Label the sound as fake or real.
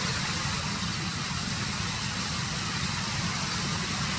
real